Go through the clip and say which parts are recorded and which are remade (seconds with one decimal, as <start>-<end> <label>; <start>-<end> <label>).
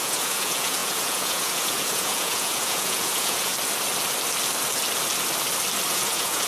0.0-3.5 remade; 3.5-5.9 recorded; 5.9-6.5 remade